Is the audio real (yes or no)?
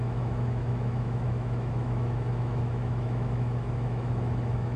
no